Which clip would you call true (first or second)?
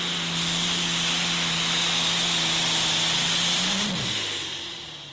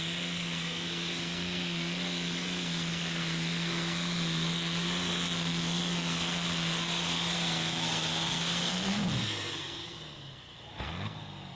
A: first